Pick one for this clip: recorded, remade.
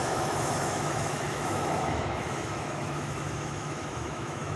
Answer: remade